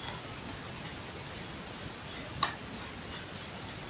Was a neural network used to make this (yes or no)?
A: no